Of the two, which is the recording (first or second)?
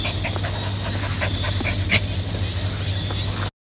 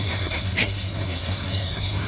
first